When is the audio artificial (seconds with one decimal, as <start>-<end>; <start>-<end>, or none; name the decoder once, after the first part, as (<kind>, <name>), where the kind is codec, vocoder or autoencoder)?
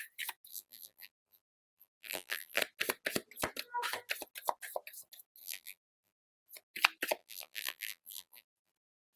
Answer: 0.5-2.6 (vocoder, BigVGAN v2); 5.4-6.3; 7.2-8.7